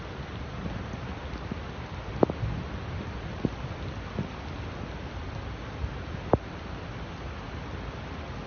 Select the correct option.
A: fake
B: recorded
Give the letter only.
B